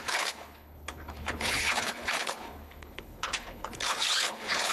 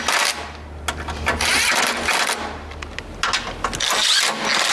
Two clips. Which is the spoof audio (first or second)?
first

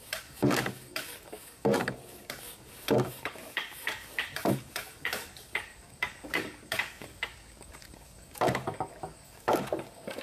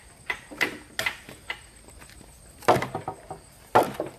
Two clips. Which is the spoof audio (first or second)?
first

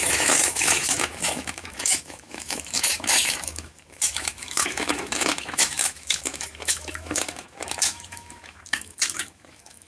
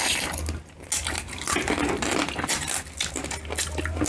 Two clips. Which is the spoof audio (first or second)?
first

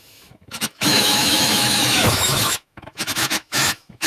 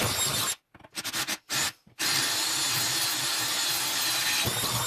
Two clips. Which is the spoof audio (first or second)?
first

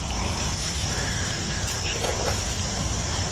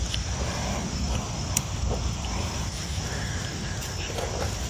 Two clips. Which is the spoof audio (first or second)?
second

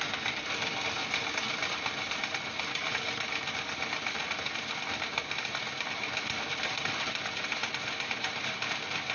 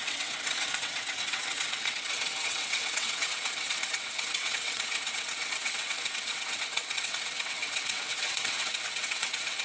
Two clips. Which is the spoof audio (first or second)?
second